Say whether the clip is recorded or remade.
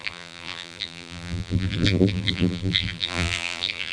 remade